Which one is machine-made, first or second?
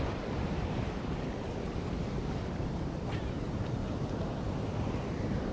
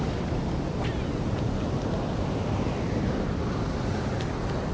first